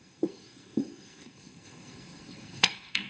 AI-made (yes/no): yes